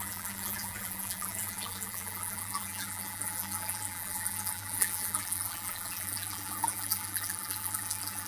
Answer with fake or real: fake